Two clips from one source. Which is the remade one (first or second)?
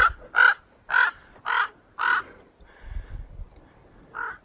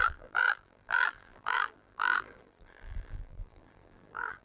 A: second